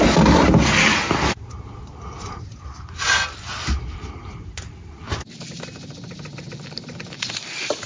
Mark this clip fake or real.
real